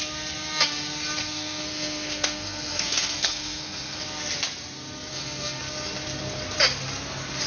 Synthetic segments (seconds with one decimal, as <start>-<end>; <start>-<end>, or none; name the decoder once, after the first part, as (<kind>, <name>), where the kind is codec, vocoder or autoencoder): 1.2-4.0 (codec, SNAC); 5.1-5.6